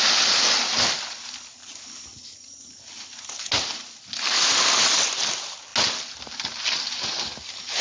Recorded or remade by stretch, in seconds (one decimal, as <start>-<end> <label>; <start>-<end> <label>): 0.0-7.8 recorded